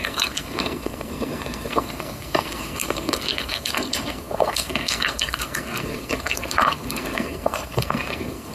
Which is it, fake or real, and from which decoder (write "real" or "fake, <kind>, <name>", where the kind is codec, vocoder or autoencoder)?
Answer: fake, codec, SNAC